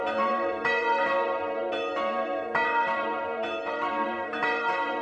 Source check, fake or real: fake